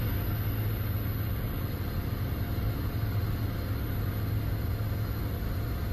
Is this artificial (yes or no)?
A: no